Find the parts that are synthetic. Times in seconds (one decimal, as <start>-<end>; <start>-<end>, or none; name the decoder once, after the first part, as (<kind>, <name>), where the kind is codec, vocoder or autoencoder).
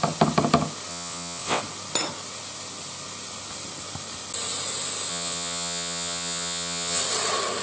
0.9-1.6 (vocoder, WaveNeXt); 5.1-7.0